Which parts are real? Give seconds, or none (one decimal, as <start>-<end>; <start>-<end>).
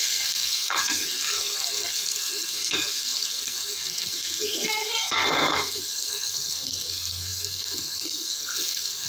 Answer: none